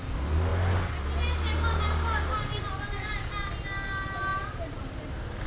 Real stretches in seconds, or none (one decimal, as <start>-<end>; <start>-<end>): 0.0-5.5